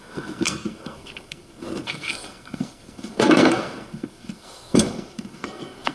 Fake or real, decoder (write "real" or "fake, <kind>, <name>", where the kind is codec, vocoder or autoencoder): fake, codec, SNAC